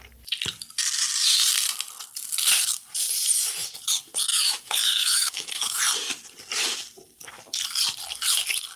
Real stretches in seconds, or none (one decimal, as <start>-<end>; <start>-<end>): 0.0-4.3; 5.8-8.8